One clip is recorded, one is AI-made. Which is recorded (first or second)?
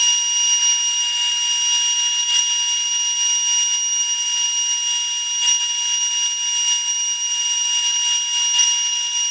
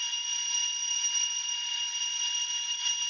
first